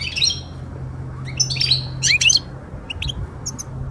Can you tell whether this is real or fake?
real